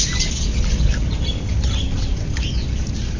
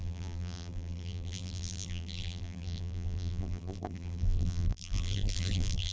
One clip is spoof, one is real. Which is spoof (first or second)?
second